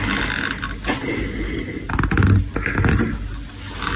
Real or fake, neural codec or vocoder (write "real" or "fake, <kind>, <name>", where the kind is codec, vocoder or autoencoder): real